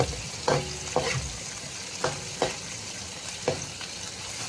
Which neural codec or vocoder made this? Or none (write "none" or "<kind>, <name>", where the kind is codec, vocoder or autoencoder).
none